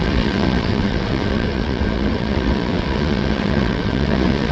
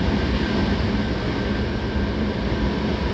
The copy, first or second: first